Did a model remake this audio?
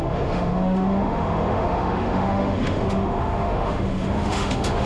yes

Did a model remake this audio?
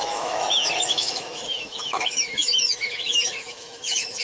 yes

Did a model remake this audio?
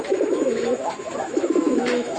yes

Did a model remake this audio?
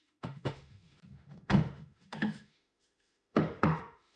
yes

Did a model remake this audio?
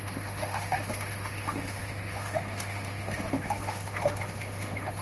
yes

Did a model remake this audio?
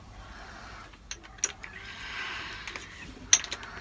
no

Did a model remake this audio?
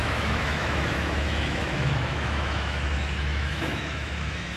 yes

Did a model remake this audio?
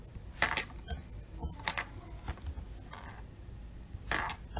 no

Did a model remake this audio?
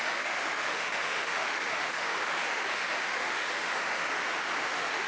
yes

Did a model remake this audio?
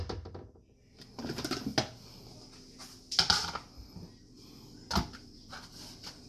no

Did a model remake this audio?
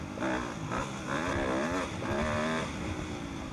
no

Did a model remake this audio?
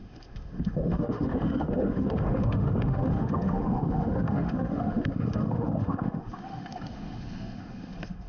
yes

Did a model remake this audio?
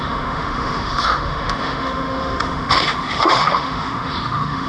yes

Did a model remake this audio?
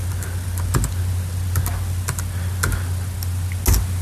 no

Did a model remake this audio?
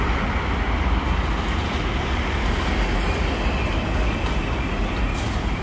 no